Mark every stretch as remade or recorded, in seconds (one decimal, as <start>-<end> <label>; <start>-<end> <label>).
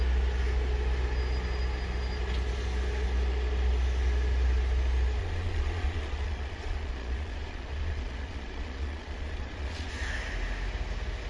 0.0-5.2 recorded; 5.2-9.9 remade; 9.9-11.3 recorded